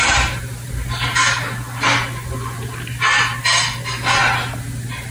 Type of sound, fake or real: real